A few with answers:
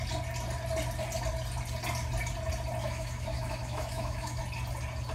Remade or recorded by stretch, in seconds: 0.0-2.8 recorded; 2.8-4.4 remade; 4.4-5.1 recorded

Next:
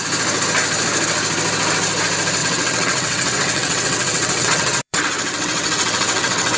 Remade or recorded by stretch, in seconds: 0.0-2.4 recorded; 2.4-6.6 remade

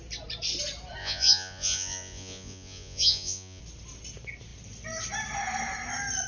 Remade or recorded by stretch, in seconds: 0.0-1.0 recorded; 1.0-3.6 remade; 3.6-6.3 recorded

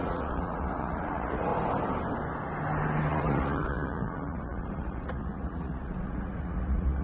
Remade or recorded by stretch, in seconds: 0.0-1.5 remade; 1.5-3.1 recorded; 3.1-7.0 remade

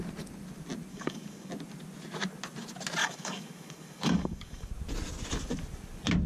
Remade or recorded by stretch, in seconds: 0.0-0.9 recorded; 0.9-1.5 remade; 1.5-3.0 recorded; 3.0-4.7 remade; 4.7-6.3 recorded